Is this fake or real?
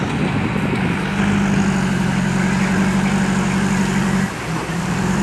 real